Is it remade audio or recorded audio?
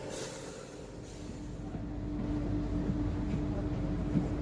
recorded